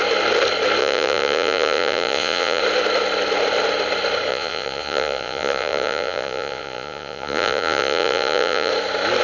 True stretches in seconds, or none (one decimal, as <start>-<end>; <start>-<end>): 0.0-0.8; 2.6-4.3; 8.7-9.2